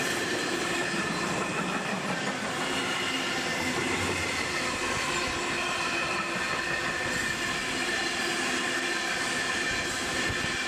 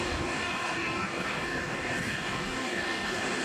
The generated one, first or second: second